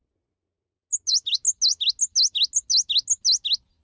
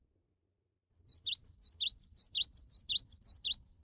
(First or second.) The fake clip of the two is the second